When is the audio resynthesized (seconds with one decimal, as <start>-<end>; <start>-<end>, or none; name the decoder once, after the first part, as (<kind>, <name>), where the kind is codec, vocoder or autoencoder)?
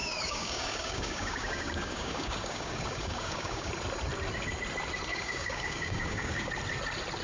0.0-3.7 (codec, DAC); 5.1-6.5